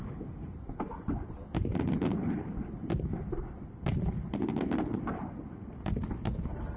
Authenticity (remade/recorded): recorded